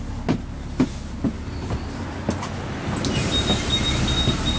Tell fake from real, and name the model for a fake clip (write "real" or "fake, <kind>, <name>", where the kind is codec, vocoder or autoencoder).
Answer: real